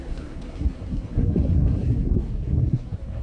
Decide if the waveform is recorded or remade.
remade